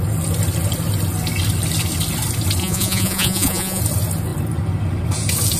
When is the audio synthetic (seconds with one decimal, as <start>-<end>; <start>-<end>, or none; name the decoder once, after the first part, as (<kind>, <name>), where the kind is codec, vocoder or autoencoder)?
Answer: 2.6-3.8 (vocoder, Vocos)